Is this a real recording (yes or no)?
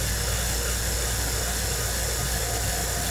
yes